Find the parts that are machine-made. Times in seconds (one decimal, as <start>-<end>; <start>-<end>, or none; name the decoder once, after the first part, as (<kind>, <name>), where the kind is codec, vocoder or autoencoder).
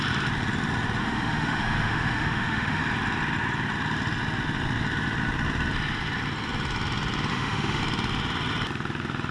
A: 1.0-2.8 (autoencoder, DAC-VAE); 7.3-7.8